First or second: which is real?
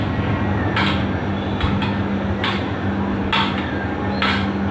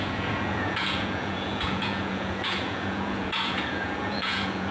first